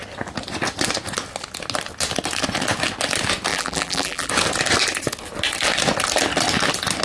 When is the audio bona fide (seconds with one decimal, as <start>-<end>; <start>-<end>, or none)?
0.0-3.5; 4.3-7.0